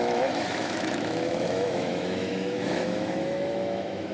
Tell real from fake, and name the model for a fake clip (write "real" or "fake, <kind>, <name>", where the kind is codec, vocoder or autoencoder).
fake, autoencoder, DAC-VAE